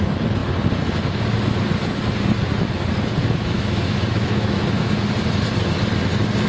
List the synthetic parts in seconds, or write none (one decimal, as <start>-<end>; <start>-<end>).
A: 3.2-5.0